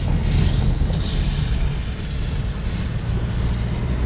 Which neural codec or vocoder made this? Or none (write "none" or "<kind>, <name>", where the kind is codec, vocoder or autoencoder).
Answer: none